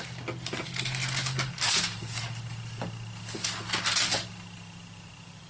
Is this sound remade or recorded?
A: recorded